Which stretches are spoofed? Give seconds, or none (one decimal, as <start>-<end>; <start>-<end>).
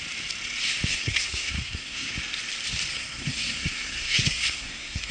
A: 0.9-2.1; 2.9-5.1